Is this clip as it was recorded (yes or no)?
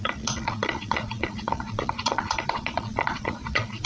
no